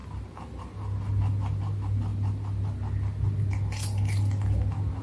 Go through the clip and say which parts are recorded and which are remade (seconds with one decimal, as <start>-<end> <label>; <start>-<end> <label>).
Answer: 0.0-5.0 recorded